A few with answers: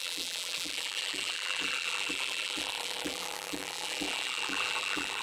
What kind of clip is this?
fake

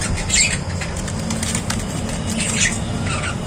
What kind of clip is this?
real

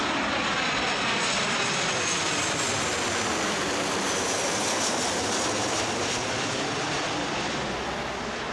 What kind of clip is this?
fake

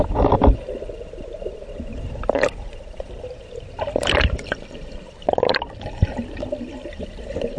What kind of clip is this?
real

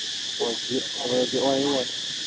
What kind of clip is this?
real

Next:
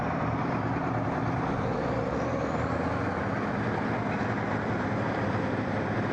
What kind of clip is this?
fake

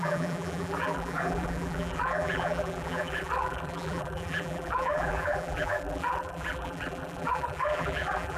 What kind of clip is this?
fake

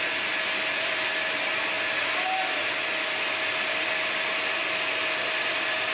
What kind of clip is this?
real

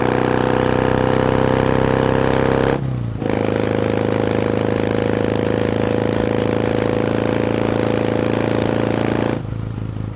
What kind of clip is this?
real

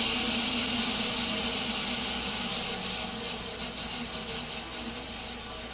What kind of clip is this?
real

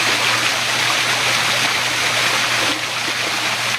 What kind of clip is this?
real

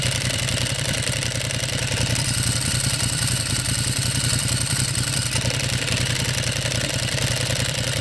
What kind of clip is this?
fake